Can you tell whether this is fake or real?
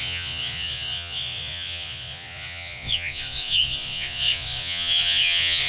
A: fake